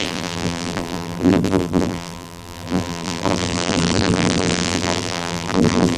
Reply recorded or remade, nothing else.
remade